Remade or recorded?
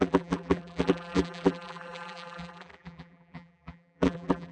remade